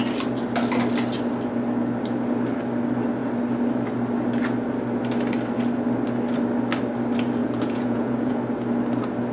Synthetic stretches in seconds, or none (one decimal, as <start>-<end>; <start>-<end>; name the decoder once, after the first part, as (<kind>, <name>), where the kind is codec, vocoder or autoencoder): 7.4-8.4 (vocoder, Vocos)